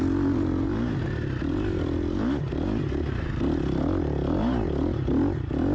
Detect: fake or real real